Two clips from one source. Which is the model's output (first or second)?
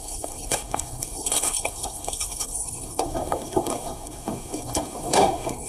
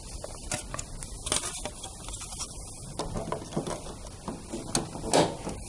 first